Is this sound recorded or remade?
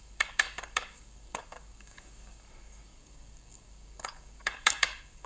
remade